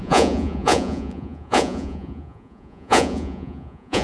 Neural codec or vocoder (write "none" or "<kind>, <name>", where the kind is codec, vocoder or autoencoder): vocoder, Vocos